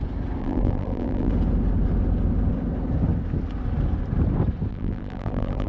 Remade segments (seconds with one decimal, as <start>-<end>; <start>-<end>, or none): 0.4-1.3; 4.7-5.7